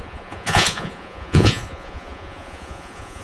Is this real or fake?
fake